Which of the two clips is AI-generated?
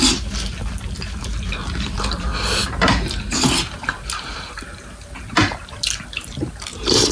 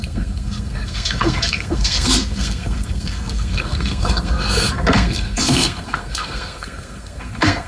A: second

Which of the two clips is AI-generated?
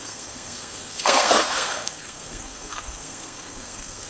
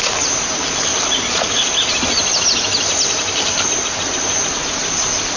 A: first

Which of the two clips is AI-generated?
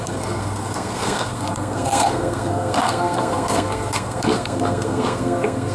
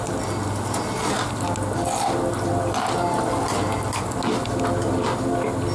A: first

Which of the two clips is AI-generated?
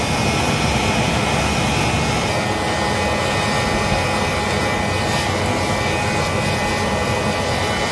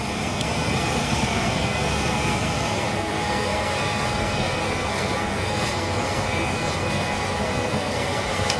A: second